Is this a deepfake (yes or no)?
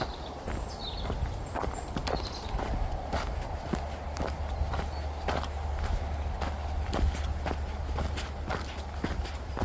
no